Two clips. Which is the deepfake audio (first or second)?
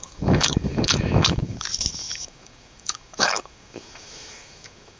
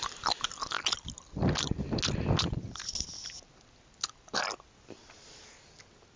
first